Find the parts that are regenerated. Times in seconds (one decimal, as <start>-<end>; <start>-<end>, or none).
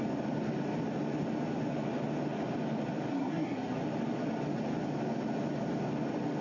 3.1-3.7